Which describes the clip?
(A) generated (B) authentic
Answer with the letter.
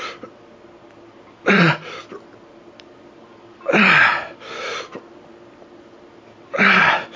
B